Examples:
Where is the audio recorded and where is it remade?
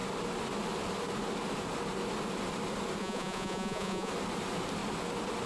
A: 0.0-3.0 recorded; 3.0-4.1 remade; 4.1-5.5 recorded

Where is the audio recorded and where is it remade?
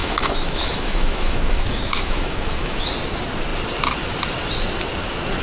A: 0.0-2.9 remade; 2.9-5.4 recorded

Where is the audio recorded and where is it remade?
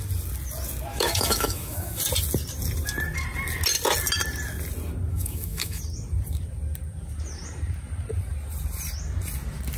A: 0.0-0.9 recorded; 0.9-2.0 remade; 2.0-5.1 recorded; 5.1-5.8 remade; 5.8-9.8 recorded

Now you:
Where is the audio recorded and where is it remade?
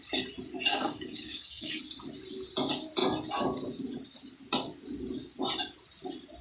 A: 0.0-0.7 recorded; 0.7-1.8 remade; 1.8-6.4 recorded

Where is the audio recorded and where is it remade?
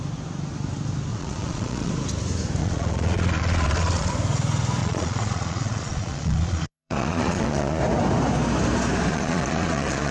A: 0.0-1.1 recorded; 1.1-1.9 remade; 1.9-2.6 recorded; 2.6-4.1 remade; 4.1-4.8 recorded; 4.8-7.8 remade; 7.8-9.1 recorded; 9.1-10.1 remade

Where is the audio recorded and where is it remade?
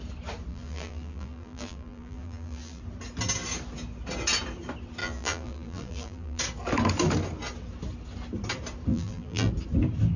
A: 0.0-0.5 recorded; 0.5-2.8 remade; 2.8-5.0 recorded; 5.0-6.4 remade; 6.4-8.9 recorded; 8.9-9.5 remade; 9.5-10.2 recorded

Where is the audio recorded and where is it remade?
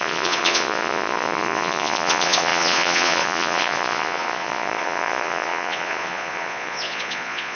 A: 0.0-7.6 remade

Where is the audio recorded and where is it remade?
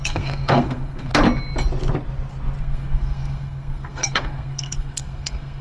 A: 0.0-1.1 remade; 1.1-2.6 recorded; 2.6-5.6 remade